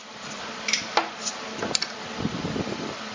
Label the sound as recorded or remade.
recorded